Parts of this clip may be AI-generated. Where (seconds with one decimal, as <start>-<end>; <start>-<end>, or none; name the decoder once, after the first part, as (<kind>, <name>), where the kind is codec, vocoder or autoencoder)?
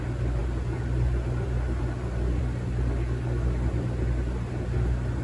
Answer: none